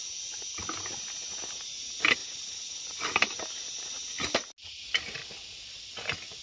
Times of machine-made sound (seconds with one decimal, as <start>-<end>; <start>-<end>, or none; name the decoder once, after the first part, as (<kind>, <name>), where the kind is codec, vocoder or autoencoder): none